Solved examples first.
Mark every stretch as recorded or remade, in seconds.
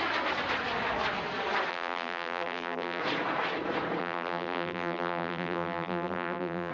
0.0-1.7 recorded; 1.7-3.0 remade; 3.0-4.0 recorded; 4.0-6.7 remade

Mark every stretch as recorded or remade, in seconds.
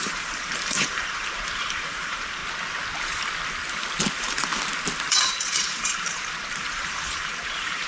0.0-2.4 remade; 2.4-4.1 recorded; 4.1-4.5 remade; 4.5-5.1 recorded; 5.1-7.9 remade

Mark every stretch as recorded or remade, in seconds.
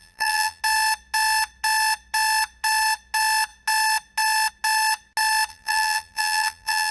0.0-0.6 remade; 0.6-5.5 recorded; 5.5-6.9 remade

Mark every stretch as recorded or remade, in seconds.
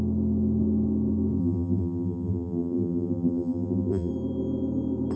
0.0-1.4 recorded; 1.4-4.1 remade; 4.1-5.2 recorded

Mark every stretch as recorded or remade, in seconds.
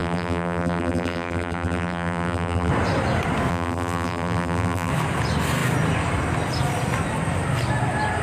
0.0-2.7 remade; 2.7-3.5 recorded; 3.5-4.9 remade; 4.9-8.2 recorded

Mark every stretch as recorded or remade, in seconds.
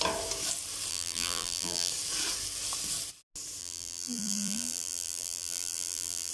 0.0-0.9 recorded; 0.9-1.9 remade; 1.9-3.6 recorded; 3.6-6.3 remade